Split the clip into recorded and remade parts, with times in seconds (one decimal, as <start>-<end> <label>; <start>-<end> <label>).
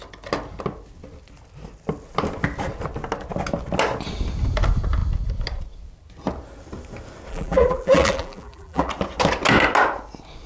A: 0.0-7.3 recorded; 7.3-8.9 remade; 8.9-10.5 recorded